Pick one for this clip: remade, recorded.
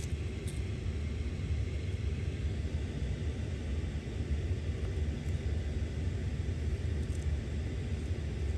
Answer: recorded